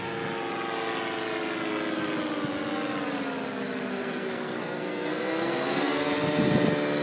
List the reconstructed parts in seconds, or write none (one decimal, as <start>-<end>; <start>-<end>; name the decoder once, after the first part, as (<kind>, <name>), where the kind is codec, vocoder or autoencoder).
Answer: 3.9-6.1 (codec, SNAC)

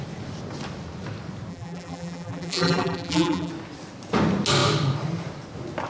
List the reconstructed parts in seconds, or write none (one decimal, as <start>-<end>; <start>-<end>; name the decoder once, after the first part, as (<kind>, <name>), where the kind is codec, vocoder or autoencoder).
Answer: 1.5-3.5 (vocoder, BigVGAN v2)

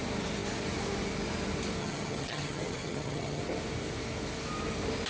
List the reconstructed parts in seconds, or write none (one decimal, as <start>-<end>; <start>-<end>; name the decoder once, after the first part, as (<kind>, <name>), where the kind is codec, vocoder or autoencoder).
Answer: 1.8-3.4 (vocoder, HiFi-GAN)

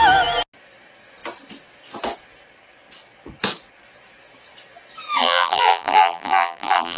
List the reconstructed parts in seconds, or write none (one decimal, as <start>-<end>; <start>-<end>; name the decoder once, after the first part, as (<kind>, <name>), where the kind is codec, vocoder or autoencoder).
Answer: 5.2-7.0 (vocoder, BigVGAN v2)